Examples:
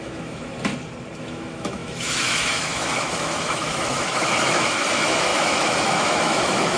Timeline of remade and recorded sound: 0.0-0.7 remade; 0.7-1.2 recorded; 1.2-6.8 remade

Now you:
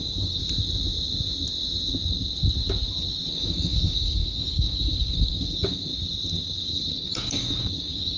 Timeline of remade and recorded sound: 0.0-0.4 remade; 0.4-3.3 recorded; 3.3-5.9 remade; 5.9-6.6 recorded; 6.6-8.2 remade

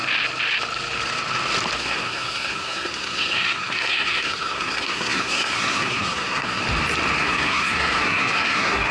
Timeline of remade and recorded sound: 0.0-1.8 recorded; 1.8-6.6 remade; 6.6-7.2 recorded; 7.2-8.9 remade

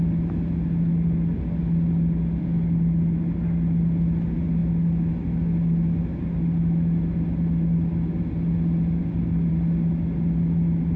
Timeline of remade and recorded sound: 0.0-11.0 recorded

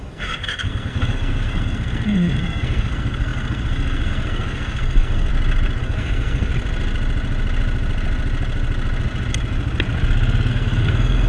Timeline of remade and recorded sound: 0.0-5.3 remade; 5.3-5.8 recorded; 5.8-6.5 remade; 6.5-10.5 recorded; 10.5-11.3 remade